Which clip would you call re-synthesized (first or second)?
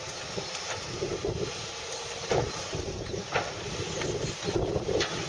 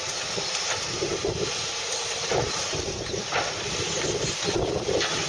second